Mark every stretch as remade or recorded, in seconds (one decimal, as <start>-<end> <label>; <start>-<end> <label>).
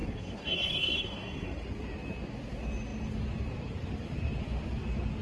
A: 0.0-1.6 remade; 1.6-5.2 recorded